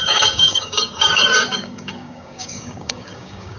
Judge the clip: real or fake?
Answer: fake